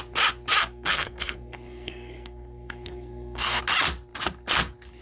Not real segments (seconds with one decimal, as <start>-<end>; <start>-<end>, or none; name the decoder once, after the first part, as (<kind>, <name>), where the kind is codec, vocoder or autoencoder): 0.6-3.6 (codec, SNAC)